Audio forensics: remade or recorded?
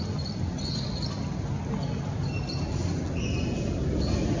recorded